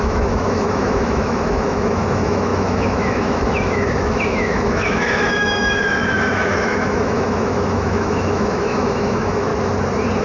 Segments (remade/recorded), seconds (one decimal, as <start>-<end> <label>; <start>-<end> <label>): 0.0-9.5 remade; 9.5-10.2 recorded